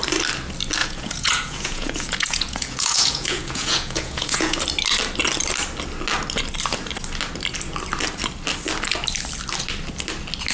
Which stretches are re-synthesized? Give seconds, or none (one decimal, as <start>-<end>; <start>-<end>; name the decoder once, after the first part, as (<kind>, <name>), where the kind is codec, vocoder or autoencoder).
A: 0.8-4.6 (vocoder, Vocos)